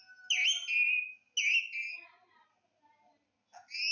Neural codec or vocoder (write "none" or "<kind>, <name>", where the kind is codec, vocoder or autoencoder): none